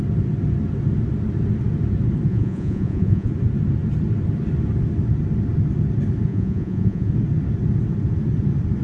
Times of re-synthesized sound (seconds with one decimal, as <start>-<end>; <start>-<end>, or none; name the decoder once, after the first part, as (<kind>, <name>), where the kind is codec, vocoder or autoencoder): 2.3-3.3 (vocoder, Vocos); 6.3-7.1